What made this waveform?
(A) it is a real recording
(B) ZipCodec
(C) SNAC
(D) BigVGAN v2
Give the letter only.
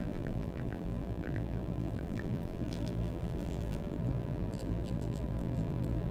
D